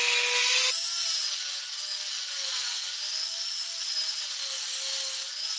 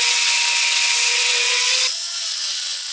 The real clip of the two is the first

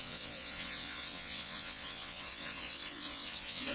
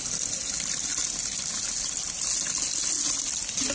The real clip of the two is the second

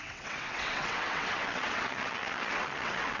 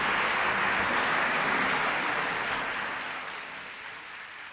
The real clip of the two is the second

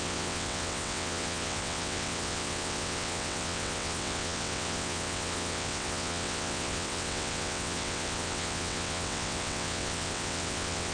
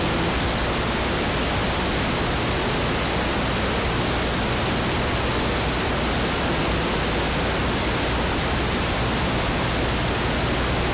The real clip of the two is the second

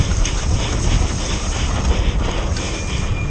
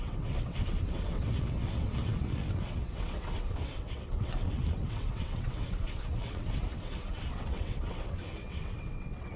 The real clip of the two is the first